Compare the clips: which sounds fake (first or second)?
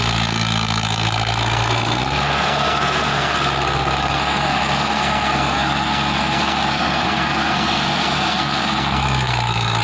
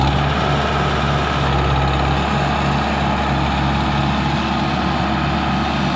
first